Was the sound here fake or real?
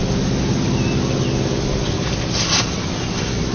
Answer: real